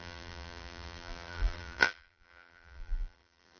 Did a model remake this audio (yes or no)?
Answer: yes